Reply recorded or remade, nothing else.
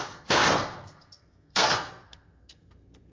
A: remade